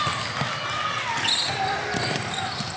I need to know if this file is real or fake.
real